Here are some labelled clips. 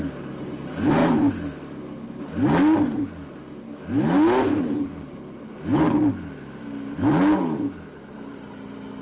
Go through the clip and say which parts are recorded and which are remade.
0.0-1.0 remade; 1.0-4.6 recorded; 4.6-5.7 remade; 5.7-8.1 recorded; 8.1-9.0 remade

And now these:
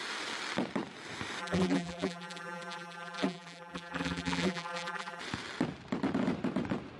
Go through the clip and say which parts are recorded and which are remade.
0.0-1.4 recorded; 1.4-5.2 remade; 5.2-7.0 recorded

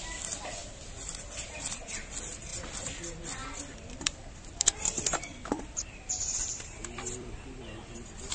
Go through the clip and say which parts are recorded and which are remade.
0.0-3.4 recorded; 3.4-7.3 remade; 7.3-8.3 recorded